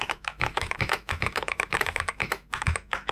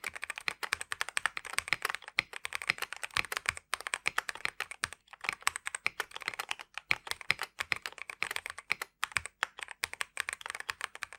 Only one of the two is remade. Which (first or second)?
first